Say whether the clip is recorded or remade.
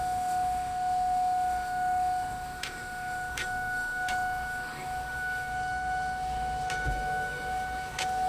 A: remade